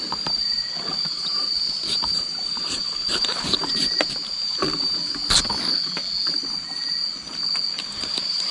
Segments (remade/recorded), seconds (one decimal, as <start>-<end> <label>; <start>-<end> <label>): 0.0-5.2 remade; 5.2-7.9 recorded; 7.9-8.5 remade